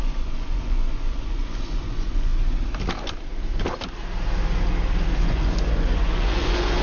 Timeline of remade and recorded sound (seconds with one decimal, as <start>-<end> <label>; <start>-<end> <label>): 0.0-2.3 remade; 2.3-5.2 recorded; 5.2-6.8 remade